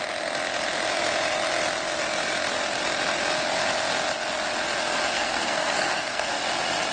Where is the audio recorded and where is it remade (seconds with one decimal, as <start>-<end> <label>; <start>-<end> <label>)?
0.0-5.1 recorded; 5.1-6.4 remade; 6.4-6.9 recorded